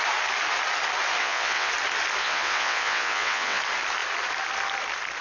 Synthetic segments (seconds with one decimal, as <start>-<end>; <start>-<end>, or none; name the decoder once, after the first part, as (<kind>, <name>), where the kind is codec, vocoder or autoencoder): 1.2-1.7 (vocoder, WaveNeXt); 2.2-3.6